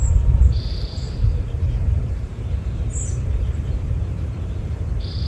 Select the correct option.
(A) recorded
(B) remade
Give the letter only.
B